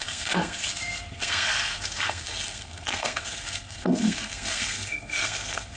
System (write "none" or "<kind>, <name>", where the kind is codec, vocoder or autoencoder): codec, SNAC